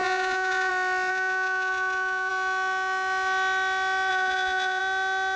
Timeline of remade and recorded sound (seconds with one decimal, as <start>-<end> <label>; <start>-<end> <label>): 0.0-0.7 remade; 0.7-1.1 recorded; 1.1-2.3 remade; 2.3-4.1 recorded; 4.1-4.8 remade; 4.8-5.4 recorded